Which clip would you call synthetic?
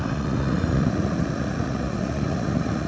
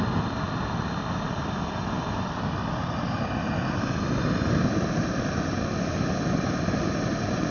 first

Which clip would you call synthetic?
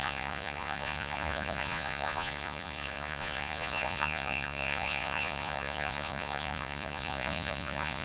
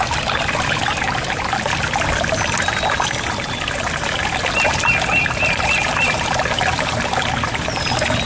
first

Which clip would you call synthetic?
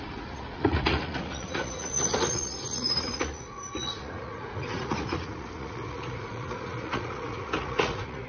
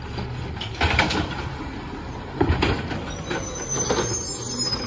first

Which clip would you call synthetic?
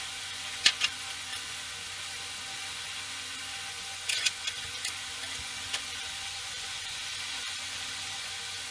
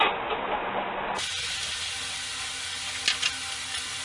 first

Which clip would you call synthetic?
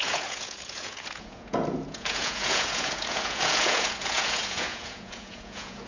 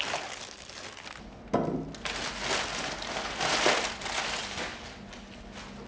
first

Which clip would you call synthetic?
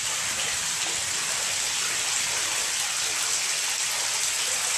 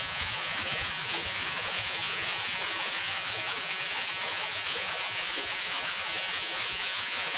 second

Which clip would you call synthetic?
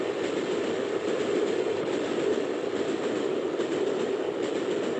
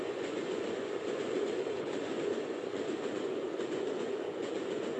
second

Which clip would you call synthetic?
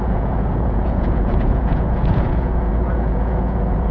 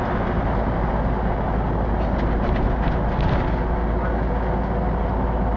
first